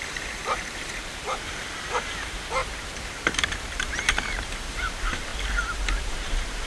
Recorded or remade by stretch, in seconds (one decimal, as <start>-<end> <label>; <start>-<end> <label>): 0.0-5.3 remade; 5.3-6.0 recorded; 6.0-6.7 remade